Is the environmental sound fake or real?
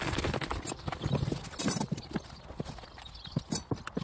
real